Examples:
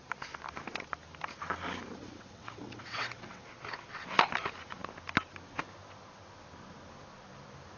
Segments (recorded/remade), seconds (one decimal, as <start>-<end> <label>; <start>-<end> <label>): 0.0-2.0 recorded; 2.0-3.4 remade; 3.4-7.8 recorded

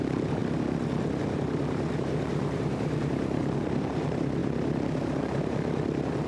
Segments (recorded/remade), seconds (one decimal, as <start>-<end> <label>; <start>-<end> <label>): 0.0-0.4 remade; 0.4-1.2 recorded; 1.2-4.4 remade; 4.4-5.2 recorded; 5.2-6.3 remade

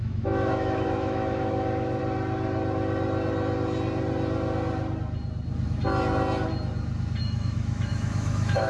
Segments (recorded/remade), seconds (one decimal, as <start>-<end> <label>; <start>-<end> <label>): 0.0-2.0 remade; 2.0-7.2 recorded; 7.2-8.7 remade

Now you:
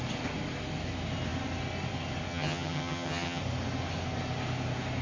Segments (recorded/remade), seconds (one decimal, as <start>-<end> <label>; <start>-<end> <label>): 0.0-2.3 recorded; 2.3-3.4 remade; 3.4-5.0 recorded

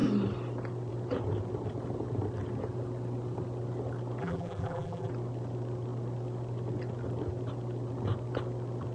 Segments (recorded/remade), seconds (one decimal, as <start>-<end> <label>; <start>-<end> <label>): 0.0-4.2 recorded; 4.2-5.1 remade; 5.1-8.9 recorded